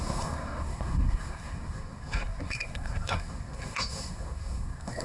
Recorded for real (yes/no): no